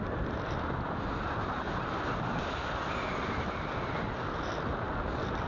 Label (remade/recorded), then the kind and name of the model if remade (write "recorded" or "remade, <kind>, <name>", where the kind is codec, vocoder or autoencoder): recorded